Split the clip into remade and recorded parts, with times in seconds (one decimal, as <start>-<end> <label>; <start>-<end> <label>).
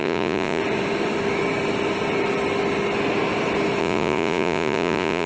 0.0-0.6 remade; 0.6-3.8 recorded; 3.8-5.3 remade